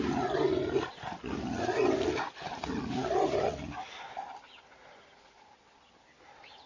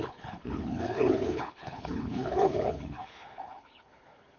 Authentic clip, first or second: first